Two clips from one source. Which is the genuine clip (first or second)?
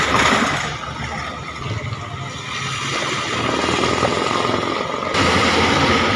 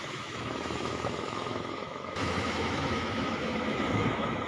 first